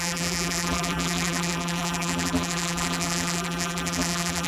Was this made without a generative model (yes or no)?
no